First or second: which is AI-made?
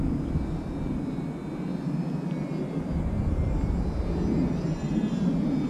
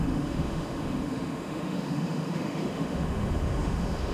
second